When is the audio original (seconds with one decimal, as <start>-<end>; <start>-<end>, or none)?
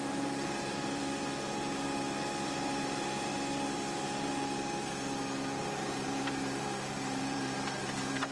1.0-2.5; 3.3-5.6